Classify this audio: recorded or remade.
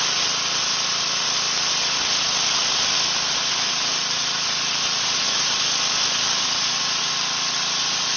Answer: recorded